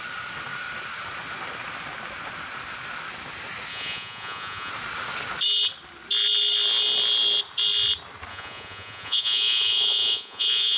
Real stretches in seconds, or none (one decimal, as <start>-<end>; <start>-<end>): 0.0-3.7; 4.7-8.3